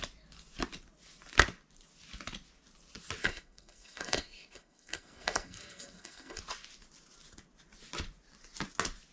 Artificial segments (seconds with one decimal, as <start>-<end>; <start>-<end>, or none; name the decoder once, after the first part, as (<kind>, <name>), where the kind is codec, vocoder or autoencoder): 3.2-6.4 (codec, SNAC)